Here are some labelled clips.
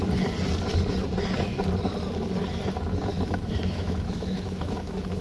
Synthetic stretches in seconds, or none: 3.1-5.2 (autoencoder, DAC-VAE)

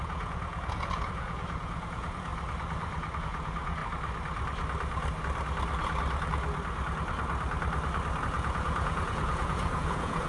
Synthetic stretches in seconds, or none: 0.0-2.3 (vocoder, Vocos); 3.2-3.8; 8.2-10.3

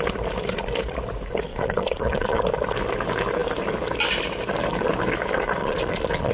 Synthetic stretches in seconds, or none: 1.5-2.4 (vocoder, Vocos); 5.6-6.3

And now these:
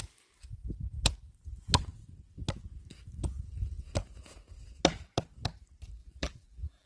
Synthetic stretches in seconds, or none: 6.0-6.9 (vocoder, BigVGAN v2)